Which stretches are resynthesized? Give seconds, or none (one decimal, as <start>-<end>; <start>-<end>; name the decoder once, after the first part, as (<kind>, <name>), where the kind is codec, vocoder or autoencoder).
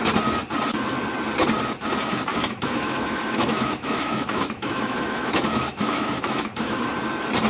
2.3-6.8 (autoencoder, DAC-VAE)